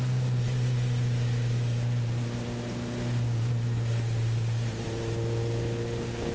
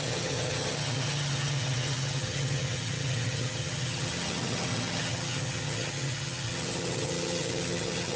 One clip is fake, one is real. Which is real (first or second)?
first